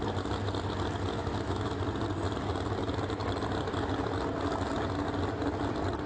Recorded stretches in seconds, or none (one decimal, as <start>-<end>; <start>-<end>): 0.0-1.2; 1.8-6.1